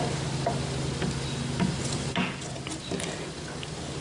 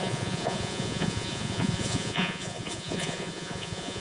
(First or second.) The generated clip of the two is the second